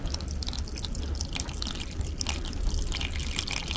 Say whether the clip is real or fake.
real